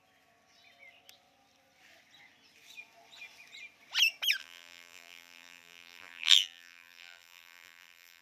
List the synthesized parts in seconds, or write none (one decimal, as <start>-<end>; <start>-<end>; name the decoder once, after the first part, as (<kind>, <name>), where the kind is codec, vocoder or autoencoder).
4.4-8.2 (vocoder, BigVGAN v2)